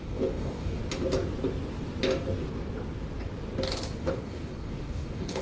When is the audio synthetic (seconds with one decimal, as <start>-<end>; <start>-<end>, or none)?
0.0-0.8; 4.0-5.4